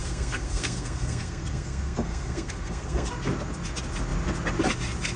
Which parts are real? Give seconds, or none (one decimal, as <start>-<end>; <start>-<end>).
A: 3.1-5.2